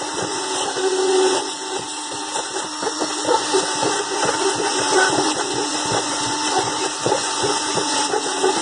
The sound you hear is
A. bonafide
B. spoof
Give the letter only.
B